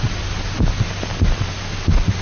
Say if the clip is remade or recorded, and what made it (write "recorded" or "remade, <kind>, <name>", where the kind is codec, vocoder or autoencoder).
recorded